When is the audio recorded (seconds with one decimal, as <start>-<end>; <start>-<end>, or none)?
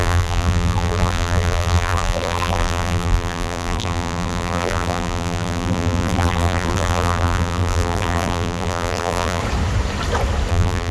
9.4-10.5